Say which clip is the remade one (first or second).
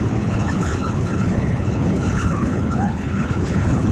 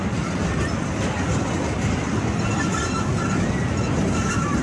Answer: first